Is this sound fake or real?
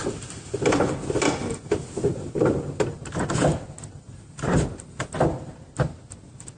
real